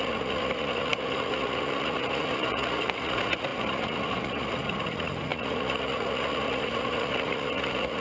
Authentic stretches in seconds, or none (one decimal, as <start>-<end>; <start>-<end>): none